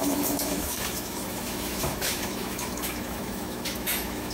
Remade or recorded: remade